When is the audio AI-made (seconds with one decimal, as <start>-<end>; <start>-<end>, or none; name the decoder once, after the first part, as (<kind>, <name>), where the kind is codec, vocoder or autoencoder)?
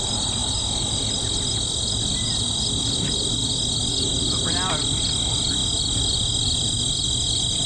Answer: none